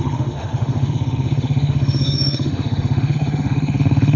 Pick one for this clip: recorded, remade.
remade